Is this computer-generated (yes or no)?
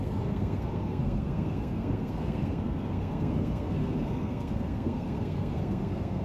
yes